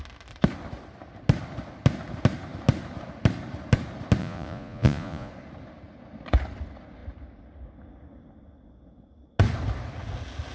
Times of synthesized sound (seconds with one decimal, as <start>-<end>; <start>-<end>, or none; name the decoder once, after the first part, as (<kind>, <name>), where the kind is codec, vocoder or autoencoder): 4.2-5.3 (vocoder, Vocos)